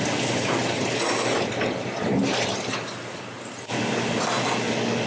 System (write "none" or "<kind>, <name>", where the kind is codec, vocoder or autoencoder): none